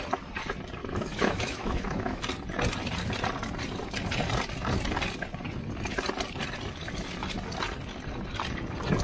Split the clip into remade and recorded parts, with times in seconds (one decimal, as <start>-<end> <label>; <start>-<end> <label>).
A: 0.0-0.8 recorded; 0.8-2.2 remade; 2.2-9.0 recorded